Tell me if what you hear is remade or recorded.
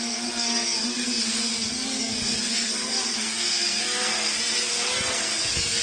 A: remade